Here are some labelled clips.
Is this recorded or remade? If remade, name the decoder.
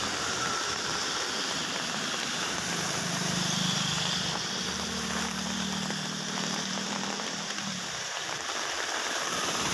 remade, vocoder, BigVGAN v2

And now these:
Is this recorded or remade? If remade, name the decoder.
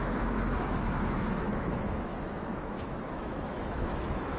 remade, autoencoder, DAC-VAE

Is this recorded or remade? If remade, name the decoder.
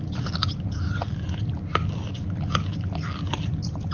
recorded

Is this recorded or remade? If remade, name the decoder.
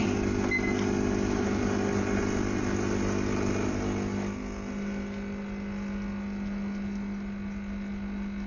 recorded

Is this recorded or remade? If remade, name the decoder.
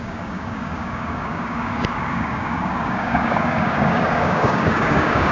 remade, codec, DAC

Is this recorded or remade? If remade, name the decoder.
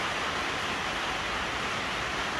recorded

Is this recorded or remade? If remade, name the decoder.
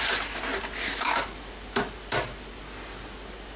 recorded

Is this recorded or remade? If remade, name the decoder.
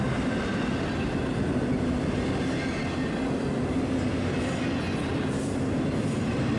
recorded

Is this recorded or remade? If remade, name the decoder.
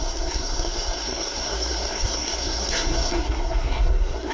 remade, codec, SNAC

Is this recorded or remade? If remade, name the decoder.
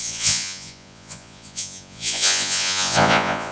remade, vocoder, Vocos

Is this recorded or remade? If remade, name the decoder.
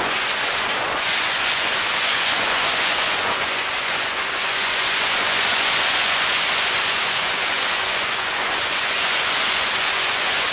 remade, vocoder, Vocos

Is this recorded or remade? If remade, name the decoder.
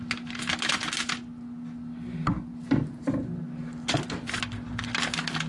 recorded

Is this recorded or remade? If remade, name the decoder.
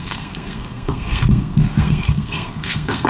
remade, codec, SNAC